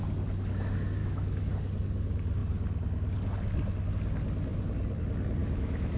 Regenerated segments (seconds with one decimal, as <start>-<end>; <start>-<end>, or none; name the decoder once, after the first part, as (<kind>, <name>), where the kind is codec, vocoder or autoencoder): 1.0-1.5 (autoencoder, DAC-VAE); 5.4-6.0